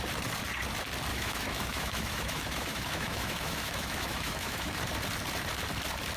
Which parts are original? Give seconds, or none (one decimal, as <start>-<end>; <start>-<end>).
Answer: 0.0-1.1; 4.8-6.2